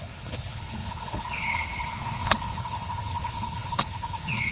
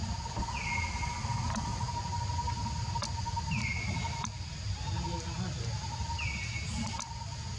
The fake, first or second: first